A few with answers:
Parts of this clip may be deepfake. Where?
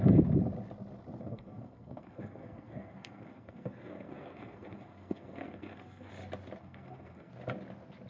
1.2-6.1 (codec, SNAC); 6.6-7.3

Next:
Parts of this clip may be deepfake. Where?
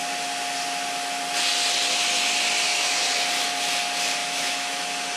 2.7-3.2 (autoencoder, DAC-VAE); 4.2-4.8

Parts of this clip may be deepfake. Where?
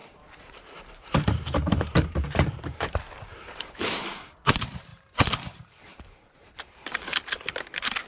0.0-7.1 (vocoder, BigVGAN v2)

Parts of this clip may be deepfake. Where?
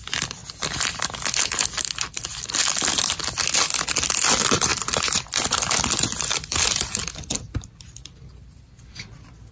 0.0-0.4 (vocoder, BigVGAN v2); 4.1-9.5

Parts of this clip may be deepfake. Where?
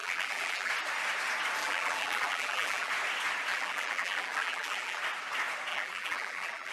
0.0-0.7 (vocoder, BigVGAN v2); 1.6-2.9; 3.5-5.0; 5.7-6.7